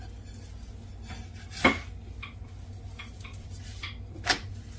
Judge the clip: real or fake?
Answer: real